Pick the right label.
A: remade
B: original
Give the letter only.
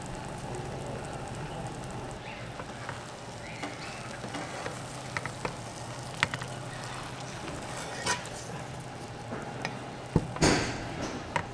B